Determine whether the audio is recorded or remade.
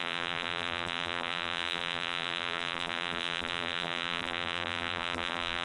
remade